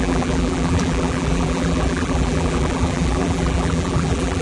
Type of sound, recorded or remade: remade